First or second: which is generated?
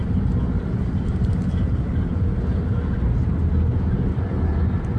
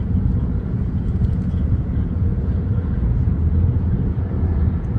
second